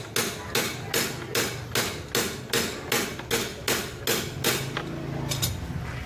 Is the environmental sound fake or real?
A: real